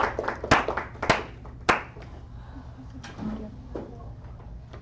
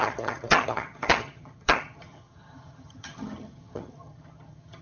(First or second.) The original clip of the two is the first